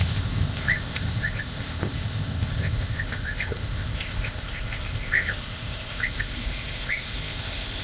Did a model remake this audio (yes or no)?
yes